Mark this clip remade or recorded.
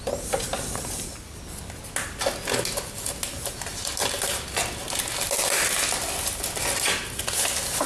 recorded